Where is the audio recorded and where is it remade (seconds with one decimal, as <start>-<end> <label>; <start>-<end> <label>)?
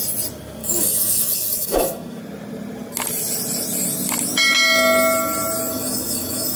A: 0.0-0.6 recorded; 0.6-2.2 remade; 2.2-5.7 recorded; 5.7-6.6 remade